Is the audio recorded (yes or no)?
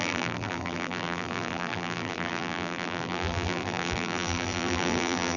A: no